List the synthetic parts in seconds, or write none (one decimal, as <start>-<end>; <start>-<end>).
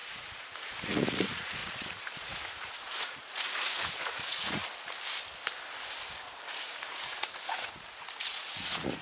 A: 0.0-4.6; 6.5-9.0